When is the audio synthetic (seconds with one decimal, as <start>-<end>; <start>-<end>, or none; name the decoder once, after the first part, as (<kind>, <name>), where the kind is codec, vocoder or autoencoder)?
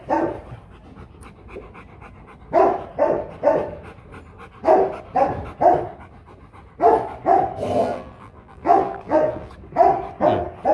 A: 7.8-9.5 (vocoder, BigVGAN v2)